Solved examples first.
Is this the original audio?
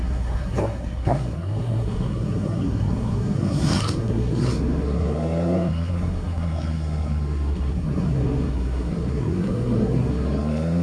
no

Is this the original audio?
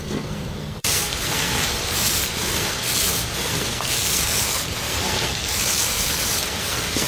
no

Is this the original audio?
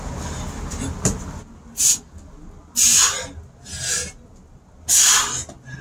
yes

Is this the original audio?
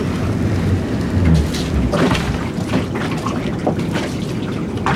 yes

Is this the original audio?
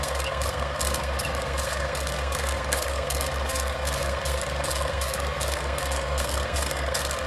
no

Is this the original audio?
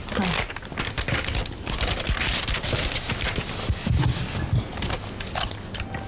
yes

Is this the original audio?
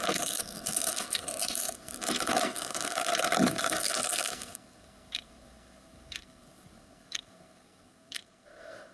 no